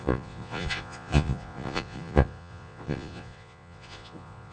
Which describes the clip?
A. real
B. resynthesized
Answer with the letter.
B